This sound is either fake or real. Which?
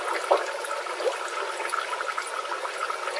real